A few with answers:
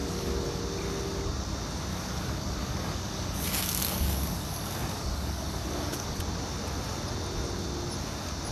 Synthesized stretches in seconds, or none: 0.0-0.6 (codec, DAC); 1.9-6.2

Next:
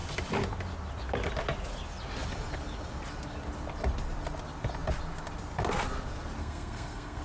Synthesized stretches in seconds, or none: 6.4-7.2 (codec, SNAC)

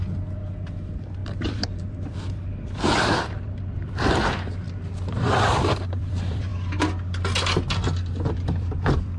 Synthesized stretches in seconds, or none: 0.0-6.5 (vocoder, BigVGAN v2); 8.3-9.2

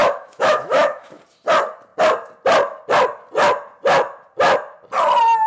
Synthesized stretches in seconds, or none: 0.0-1.2 (autoencoder, DAC-VAE)

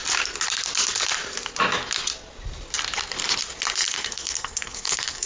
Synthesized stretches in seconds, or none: 3.9-5.3 (codec, SNAC)